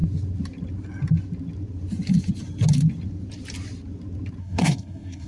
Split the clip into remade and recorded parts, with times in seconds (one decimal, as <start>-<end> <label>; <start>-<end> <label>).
0.0-4.4 recorded; 4.4-5.3 remade

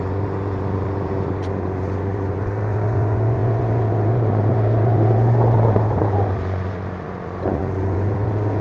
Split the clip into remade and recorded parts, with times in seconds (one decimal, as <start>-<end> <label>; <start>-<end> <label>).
0.0-8.6 remade

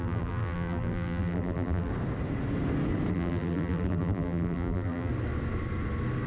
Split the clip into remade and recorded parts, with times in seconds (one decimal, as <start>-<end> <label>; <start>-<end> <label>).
0.0-1.9 remade; 1.9-3.1 recorded; 3.1-5.1 remade; 5.1-6.3 recorded

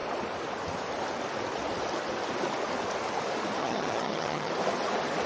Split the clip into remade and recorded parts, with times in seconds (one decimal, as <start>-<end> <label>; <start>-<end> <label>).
0.0-3.6 recorded; 3.6-4.5 remade; 4.5-5.3 recorded

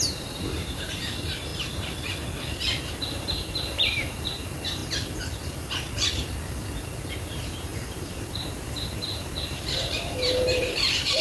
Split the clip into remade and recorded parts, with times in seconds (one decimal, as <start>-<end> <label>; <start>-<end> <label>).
0.0-1.5 remade; 1.5-2.9 recorded; 2.9-4.8 remade; 4.8-7.1 recorded; 7.1-11.2 remade

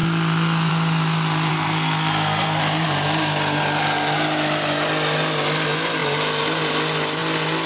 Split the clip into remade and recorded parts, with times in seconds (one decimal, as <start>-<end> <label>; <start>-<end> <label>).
0.0-1.5 recorded; 1.5-2.6 remade; 2.6-7.7 recorded